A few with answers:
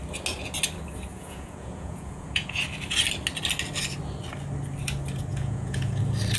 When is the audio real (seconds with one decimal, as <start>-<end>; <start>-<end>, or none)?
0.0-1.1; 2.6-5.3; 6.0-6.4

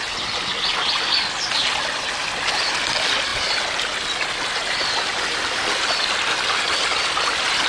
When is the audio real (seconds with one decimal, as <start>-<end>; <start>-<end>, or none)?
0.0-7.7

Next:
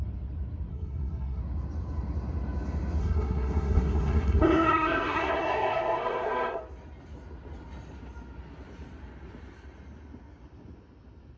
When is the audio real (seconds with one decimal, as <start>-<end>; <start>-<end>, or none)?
0.0-0.7; 1.4-3.0; 6.6-11.4

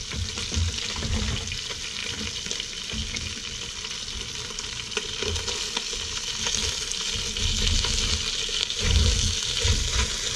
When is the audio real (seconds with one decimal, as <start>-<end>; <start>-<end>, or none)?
0.0-10.4